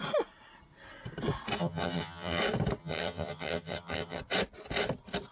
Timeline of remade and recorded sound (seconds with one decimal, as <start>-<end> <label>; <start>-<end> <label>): 0.0-1.6 recorded; 1.6-2.4 remade; 2.4-2.8 recorded; 2.8-4.2 remade; 4.2-5.3 recorded